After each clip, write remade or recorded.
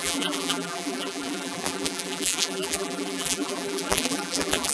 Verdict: remade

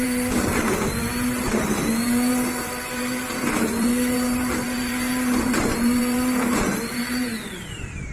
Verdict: remade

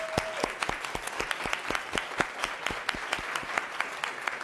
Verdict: recorded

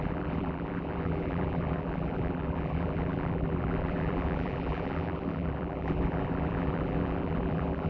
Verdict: remade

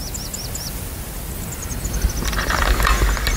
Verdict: recorded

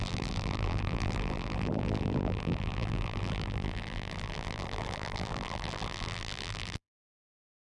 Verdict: remade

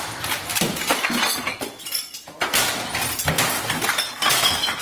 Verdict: recorded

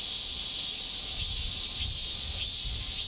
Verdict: remade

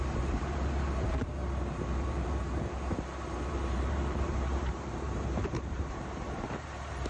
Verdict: remade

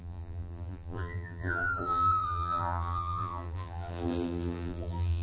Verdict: remade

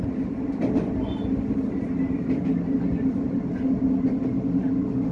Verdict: recorded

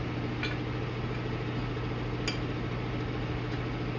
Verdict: recorded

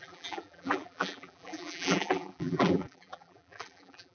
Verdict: remade